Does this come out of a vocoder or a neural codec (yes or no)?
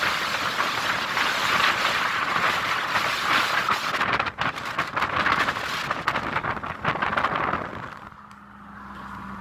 no